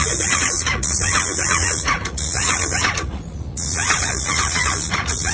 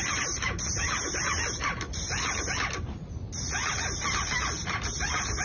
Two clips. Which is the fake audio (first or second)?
first